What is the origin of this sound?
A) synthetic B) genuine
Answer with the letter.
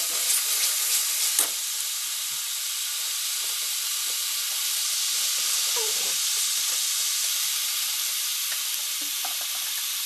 B